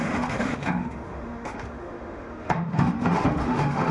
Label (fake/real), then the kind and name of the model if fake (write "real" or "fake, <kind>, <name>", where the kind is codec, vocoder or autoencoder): fake, autoencoder, DAC-VAE